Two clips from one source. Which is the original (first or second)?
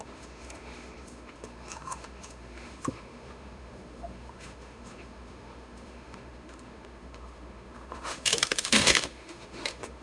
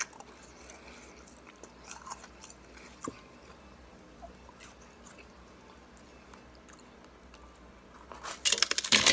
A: second